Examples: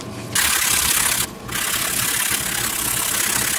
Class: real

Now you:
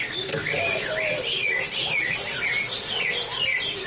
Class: real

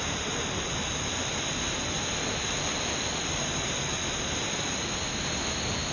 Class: real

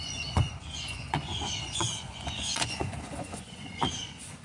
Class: fake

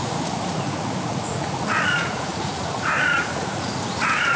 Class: fake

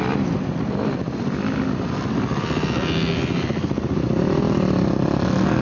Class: real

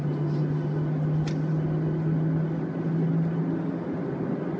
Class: real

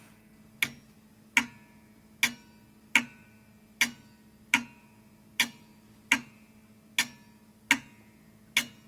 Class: real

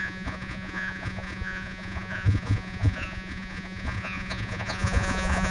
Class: fake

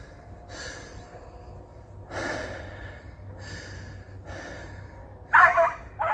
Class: real